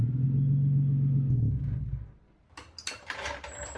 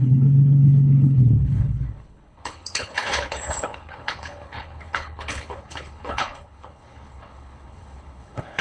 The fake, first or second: second